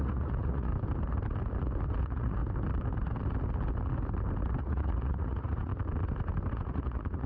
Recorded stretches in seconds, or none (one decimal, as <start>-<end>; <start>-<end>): 0.7-2.0; 2.4-4.6; 5.7-6.5